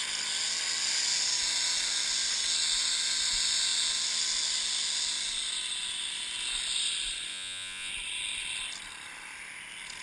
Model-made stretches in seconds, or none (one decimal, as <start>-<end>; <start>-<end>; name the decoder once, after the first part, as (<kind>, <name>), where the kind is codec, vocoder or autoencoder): 7.3-7.9 (vocoder, Vocos)